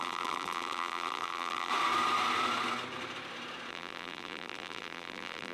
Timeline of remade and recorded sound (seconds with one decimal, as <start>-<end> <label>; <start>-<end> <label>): 0.0-1.7 remade; 1.7-3.7 recorded; 3.7-5.5 remade